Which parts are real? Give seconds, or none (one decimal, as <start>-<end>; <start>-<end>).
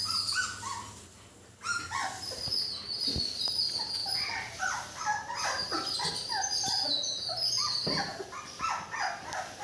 0.0-2.0; 2.5-4.0; 6.1-9.6